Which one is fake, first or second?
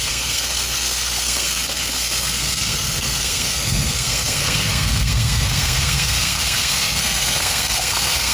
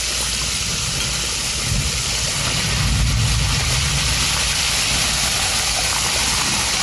first